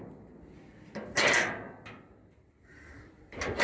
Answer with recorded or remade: recorded